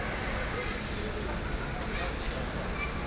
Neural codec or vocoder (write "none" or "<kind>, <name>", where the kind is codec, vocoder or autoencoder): none